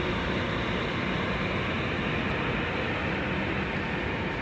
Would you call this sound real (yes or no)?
yes